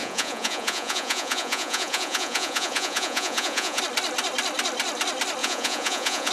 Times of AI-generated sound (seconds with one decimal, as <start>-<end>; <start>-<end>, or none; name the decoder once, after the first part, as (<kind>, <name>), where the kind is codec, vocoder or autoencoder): 0.0-3.8 (vocoder, Vocos); 5.4-6.3